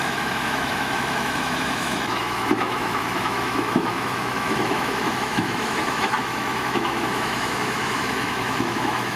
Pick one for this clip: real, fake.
fake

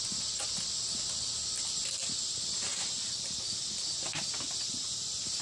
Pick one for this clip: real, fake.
real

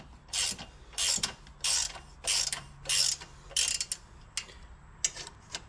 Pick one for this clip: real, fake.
real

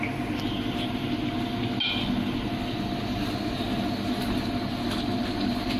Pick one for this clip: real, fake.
real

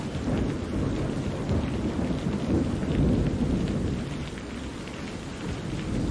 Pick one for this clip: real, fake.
real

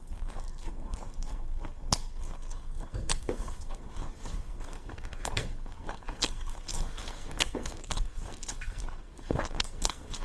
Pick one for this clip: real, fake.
fake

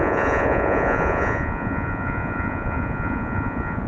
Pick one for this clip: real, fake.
fake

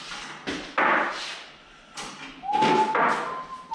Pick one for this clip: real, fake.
real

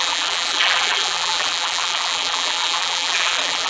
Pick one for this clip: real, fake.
fake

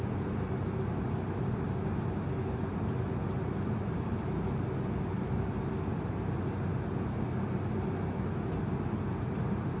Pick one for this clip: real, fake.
real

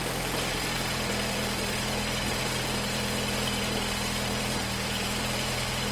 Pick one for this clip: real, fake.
fake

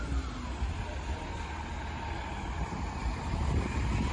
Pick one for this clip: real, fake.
real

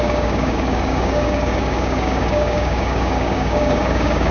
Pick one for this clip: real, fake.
fake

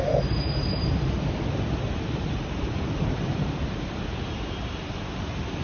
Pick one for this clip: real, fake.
fake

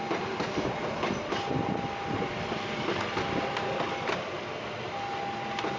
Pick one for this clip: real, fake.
real